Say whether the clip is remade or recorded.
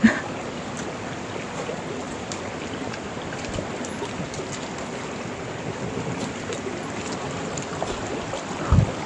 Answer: recorded